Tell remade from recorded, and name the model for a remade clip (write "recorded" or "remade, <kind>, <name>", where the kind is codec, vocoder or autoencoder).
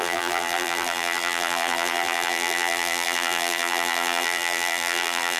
remade, vocoder, BigVGAN v2